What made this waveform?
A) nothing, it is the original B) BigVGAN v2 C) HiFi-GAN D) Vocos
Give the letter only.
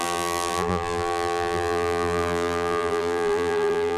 B